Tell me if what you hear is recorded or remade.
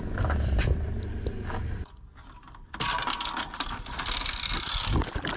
recorded